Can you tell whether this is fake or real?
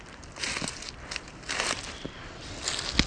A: real